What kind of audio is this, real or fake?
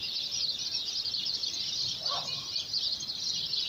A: real